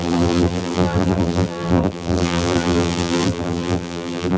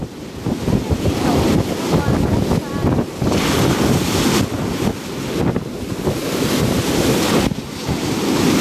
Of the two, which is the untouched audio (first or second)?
second